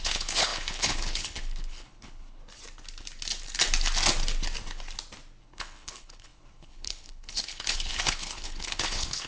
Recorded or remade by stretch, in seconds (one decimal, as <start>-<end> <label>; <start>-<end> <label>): 0.0-2.4 remade; 2.4-5.4 recorded; 5.4-9.3 remade